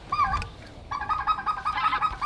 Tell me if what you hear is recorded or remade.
recorded